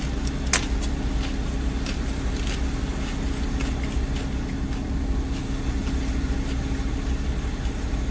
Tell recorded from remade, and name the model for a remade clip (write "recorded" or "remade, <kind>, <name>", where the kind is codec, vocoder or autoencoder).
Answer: recorded